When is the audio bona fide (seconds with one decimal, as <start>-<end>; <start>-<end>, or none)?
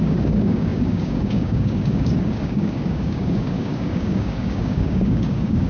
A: none